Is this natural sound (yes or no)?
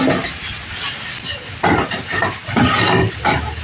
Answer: yes